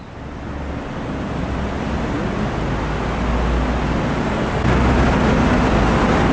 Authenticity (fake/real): real